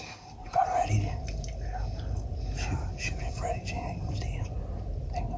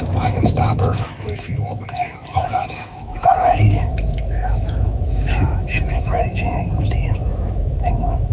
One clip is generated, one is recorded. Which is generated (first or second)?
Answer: second